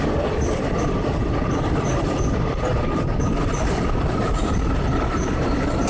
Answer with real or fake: fake